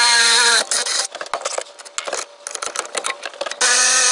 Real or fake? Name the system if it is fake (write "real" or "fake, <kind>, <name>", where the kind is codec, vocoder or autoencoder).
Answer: real